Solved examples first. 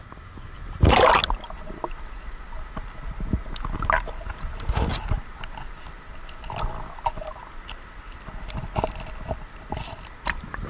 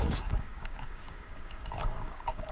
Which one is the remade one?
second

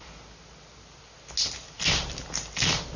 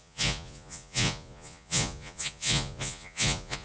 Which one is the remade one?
second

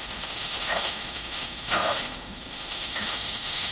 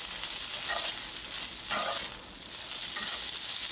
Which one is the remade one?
first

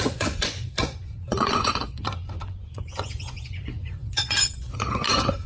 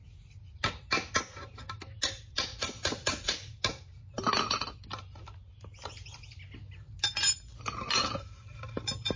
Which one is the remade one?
first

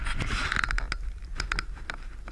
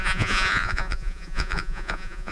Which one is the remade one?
second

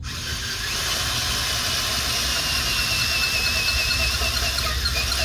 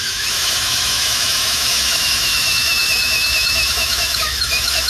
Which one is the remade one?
second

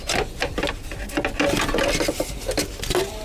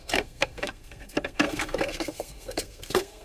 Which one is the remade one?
second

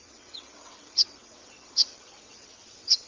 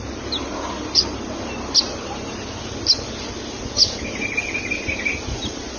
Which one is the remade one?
first